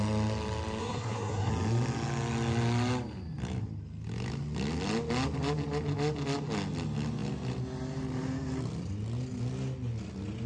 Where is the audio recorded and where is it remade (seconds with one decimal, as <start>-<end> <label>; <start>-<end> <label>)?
0.0-0.8 recorded; 0.8-1.5 remade; 1.5-10.5 recorded